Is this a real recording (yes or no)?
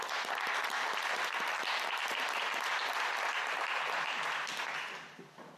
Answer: yes